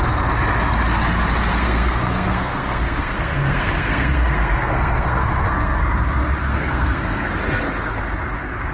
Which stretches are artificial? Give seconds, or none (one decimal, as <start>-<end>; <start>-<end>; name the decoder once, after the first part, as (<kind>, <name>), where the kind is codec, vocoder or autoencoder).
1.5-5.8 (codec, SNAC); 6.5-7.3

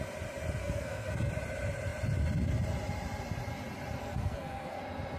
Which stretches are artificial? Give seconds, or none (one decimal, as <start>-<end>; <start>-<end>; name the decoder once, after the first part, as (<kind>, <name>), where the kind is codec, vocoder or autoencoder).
0.6-1.3 (codec, SNAC); 4.0-4.8

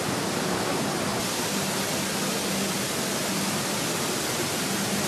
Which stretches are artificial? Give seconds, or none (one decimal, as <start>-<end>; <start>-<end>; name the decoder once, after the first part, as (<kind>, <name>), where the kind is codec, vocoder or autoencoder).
none

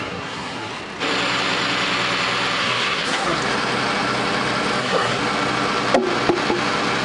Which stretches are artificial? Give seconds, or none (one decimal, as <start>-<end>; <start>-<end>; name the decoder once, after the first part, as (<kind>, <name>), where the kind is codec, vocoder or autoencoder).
0.0-0.7 (codec, SNAC); 2.6-3.4; 4.8-5.2